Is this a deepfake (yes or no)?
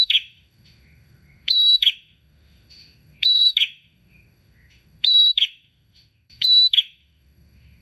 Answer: yes